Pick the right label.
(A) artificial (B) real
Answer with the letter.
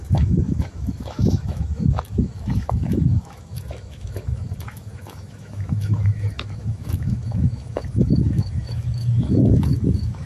A